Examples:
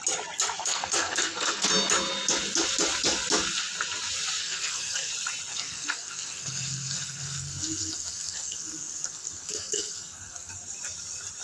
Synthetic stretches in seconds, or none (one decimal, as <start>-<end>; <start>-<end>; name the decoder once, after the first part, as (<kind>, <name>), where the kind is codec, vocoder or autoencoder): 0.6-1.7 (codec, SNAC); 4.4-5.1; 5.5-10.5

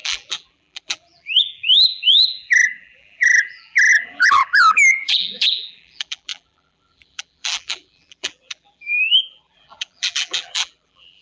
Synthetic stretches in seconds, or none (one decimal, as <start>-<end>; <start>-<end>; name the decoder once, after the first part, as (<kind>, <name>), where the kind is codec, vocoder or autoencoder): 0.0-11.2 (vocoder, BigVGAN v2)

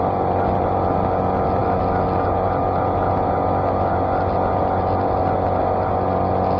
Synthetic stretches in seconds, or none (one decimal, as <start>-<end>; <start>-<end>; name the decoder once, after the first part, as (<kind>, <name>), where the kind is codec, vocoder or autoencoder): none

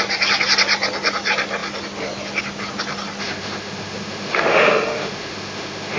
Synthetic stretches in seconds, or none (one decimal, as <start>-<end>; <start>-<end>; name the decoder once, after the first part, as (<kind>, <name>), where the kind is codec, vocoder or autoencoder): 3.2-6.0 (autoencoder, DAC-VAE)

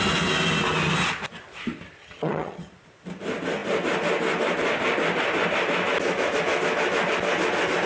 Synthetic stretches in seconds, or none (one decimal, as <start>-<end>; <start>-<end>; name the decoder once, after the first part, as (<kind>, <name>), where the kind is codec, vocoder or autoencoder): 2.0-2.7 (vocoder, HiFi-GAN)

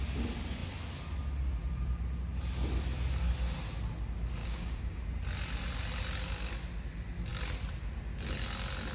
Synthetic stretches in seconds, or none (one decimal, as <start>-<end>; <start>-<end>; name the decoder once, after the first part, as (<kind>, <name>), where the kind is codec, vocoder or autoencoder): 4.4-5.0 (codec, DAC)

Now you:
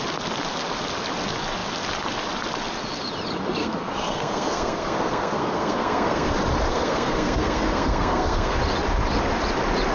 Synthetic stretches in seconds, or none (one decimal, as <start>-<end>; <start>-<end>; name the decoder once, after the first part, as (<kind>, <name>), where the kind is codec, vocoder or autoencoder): 3.6-6.3 (codec, SNAC); 6.7-8.6

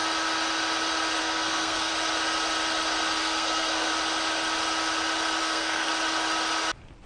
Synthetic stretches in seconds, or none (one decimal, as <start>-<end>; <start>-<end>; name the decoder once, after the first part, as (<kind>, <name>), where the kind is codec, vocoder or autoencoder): 1.2-1.9 (codec, SNAC); 3.2-3.9; 5.4-5.9